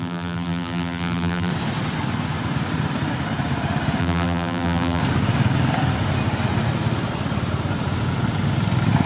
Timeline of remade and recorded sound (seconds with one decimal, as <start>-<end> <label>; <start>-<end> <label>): 0.0-1.5 remade; 1.5-4.0 recorded; 4.0-5.0 remade; 5.0-9.1 recorded